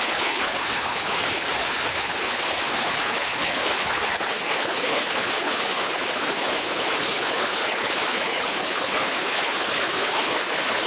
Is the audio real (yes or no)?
no